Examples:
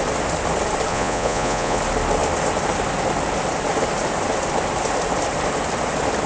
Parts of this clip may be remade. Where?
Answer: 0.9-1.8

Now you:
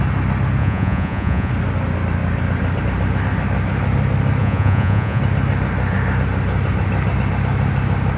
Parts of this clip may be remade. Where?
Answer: 0.6-1.5; 4.4-5.2

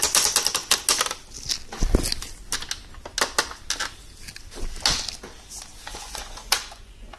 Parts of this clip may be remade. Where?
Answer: 5.9-7.2

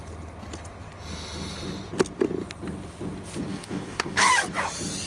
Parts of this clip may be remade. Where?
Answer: 3.5-4.3

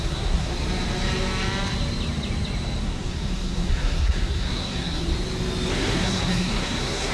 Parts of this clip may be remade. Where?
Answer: 0.0-0.5; 2.8-5.1; 5.7-7.1

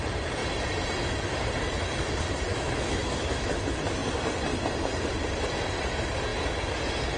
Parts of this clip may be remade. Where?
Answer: 2.5-3.6